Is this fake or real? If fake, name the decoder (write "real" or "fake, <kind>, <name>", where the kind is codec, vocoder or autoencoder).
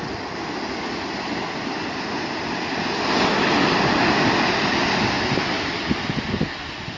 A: real